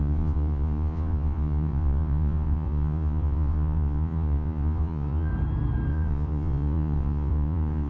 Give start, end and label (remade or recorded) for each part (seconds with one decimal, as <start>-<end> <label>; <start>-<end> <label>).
0.0-5.3 remade; 5.3-5.9 recorded; 5.9-7.9 remade